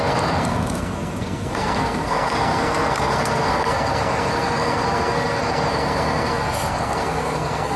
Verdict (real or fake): fake